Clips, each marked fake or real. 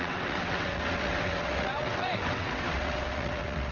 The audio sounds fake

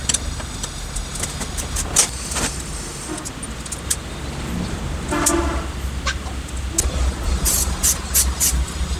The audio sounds real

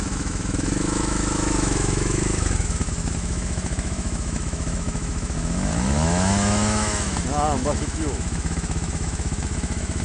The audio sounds fake